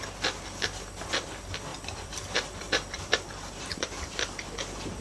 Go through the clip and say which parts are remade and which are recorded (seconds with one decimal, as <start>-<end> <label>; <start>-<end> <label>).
0.0-1.7 recorded; 1.7-5.0 remade